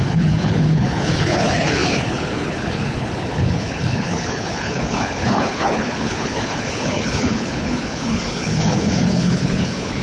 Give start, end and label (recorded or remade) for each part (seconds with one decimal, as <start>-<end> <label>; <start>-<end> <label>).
0.0-10.0 remade